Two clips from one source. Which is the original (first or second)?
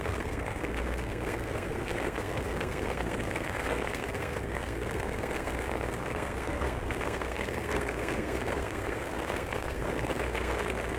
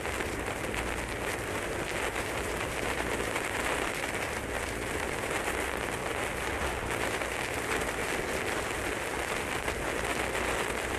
second